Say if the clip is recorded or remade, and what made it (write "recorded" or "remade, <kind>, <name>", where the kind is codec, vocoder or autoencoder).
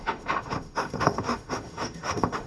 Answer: remade, autoencoder, DAC-VAE